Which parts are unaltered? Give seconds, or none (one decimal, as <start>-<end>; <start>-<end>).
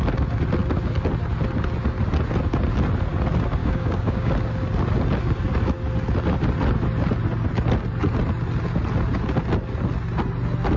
0.0-3.6; 4.3-10.8